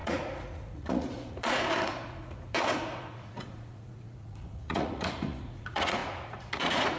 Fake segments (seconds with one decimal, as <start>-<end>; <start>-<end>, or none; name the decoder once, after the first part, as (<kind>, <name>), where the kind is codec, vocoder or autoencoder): 0.0-7.0 (vocoder, Vocos)